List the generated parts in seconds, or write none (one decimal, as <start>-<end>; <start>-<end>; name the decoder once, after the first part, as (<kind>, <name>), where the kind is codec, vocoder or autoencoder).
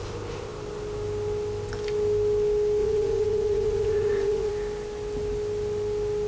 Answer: 2.8-4.5 (vocoder, Vocos)